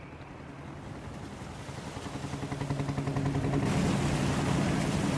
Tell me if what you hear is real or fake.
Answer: real